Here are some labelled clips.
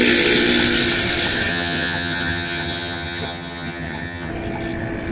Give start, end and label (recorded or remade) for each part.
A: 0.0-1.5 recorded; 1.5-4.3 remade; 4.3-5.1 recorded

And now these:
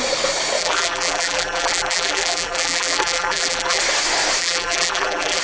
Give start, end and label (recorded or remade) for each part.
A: 0.0-0.6 recorded; 0.6-3.8 remade; 3.8-4.4 recorded; 4.4-5.4 remade

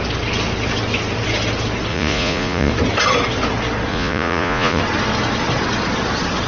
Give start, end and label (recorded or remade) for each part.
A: 0.0-1.9 recorded; 1.9-2.7 remade; 2.7-3.9 recorded; 3.9-4.8 remade; 4.8-6.5 recorded